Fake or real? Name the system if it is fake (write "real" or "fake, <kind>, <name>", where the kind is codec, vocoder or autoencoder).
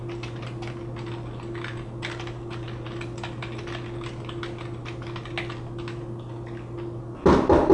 real